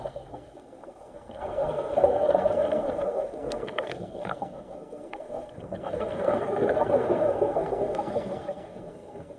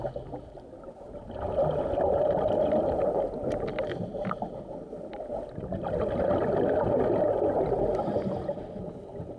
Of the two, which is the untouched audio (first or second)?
second